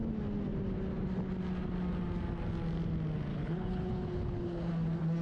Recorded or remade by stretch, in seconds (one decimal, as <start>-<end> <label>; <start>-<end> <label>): 0.0-3.3 recorded; 3.3-4.7 remade; 4.7-5.2 recorded